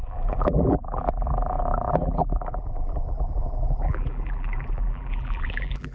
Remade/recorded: remade